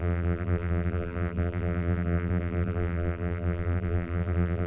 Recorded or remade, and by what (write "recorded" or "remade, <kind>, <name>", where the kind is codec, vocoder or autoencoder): remade, vocoder, BigVGAN v2